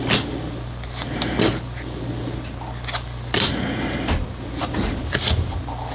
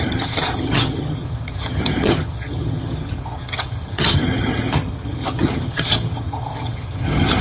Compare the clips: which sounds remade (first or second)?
second